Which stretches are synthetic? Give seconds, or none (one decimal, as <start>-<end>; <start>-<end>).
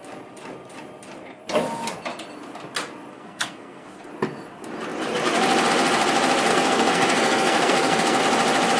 3.1-4.1; 6.5-8.2